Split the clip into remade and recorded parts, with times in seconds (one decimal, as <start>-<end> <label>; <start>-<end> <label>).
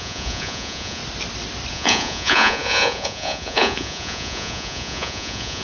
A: 0.0-1.0 remade; 1.0-1.7 recorded; 1.7-5.6 remade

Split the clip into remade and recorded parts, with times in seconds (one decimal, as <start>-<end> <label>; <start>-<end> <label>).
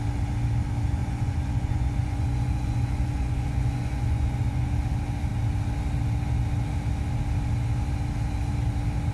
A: 0.0-1.0 recorded; 1.0-4.7 remade; 4.7-9.1 recorded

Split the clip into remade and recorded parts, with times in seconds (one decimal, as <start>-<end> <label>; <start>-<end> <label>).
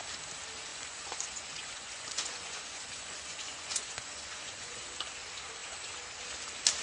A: 0.0-0.7 recorded; 0.7-4.8 remade; 4.8-6.8 recorded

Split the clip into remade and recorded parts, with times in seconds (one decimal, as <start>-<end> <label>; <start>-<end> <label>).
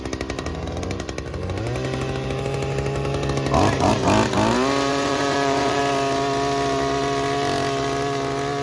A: 0.0-4.9 recorded; 4.9-5.8 remade; 5.8-8.6 recorded